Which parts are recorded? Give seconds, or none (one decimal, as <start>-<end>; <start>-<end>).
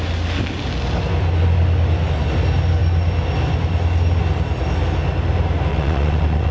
0.0-5.7